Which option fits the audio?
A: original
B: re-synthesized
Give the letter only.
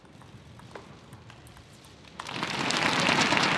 A